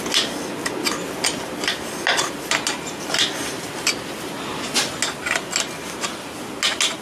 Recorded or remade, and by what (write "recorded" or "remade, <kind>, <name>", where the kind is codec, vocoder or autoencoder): recorded